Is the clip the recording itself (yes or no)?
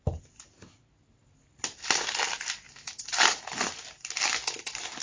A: yes